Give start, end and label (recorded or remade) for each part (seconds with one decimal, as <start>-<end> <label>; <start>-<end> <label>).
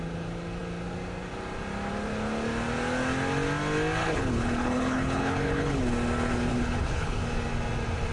0.0-4.0 recorded; 4.0-5.8 remade; 5.8-6.5 recorded; 6.5-7.2 remade; 7.2-8.1 recorded